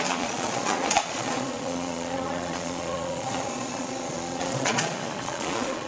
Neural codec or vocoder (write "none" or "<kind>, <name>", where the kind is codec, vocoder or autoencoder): vocoder, Vocos